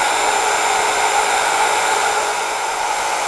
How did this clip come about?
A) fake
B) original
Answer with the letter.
A